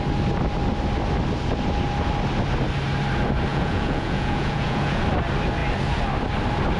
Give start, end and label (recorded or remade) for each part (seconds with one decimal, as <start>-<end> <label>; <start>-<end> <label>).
0.0-3.5 recorded; 3.5-5.0 remade; 5.0-6.8 recorded